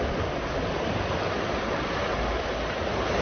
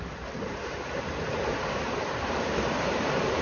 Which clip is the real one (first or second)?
first